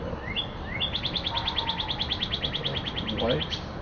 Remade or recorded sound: recorded